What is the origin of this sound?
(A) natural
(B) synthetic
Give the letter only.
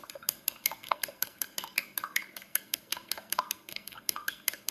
B